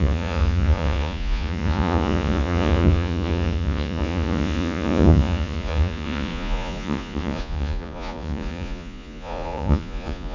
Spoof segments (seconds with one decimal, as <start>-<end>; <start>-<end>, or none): 0.0-10.3